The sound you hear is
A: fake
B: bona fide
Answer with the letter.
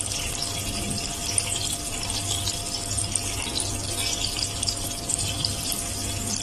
B